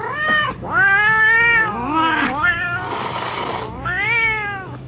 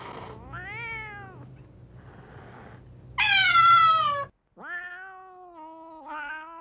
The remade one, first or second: first